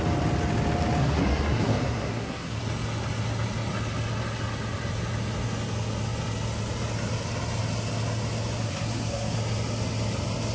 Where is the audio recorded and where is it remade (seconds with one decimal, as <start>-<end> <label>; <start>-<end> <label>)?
0.0-1.0 recorded; 1.0-2.6 remade; 2.6-8.6 recorded; 8.6-9.4 remade; 9.4-10.5 recorded